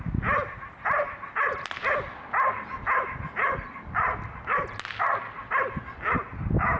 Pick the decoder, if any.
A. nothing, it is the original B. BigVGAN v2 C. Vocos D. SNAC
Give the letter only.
A